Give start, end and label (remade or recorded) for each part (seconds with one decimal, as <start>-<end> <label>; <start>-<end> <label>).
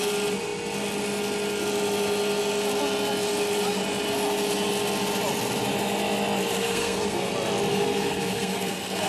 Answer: 0.0-6.6 recorded; 6.6-7.3 remade; 7.3-7.7 recorded; 7.7-9.1 remade